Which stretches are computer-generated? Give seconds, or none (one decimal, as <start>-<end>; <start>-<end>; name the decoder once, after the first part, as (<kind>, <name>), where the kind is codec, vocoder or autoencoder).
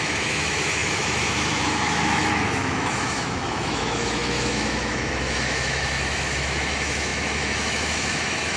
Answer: 0.0-8.6 (autoencoder, DAC-VAE)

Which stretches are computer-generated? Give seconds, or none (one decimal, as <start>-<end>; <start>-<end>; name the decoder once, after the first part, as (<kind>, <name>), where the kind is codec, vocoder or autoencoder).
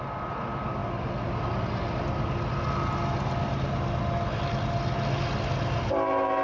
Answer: none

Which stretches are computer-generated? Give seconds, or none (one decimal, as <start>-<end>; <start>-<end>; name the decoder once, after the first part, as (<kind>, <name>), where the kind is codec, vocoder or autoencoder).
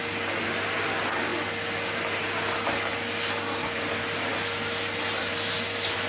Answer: none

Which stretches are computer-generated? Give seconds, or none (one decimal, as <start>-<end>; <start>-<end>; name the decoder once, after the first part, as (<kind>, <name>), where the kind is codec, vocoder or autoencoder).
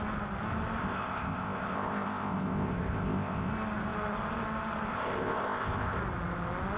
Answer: 0.8-3.5 (codec, ZipCodec); 4.9-6.0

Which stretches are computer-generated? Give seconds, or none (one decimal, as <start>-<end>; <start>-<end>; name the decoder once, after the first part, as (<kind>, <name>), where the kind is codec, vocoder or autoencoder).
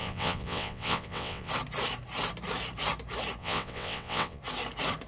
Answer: 0.0-1.5 (vocoder, WaveNeXt); 3.4-4.4